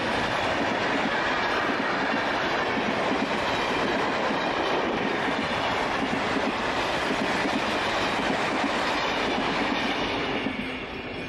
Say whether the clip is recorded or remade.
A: recorded